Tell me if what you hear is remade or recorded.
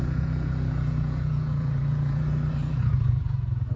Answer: remade